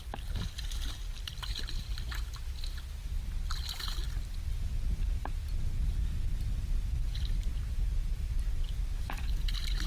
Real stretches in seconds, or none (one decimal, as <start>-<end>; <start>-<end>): 0.0-1.0; 1.9-3.0; 3.9-9.9